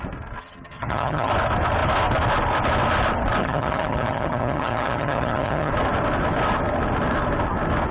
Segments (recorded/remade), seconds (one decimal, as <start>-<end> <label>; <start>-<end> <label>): 0.0-0.4 recorded; 0.4-1.3 remade; 1.3-3.4 recorded; 3.4-5.7 remade; 5.7-7.9 recorded